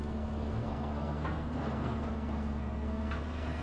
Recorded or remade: remade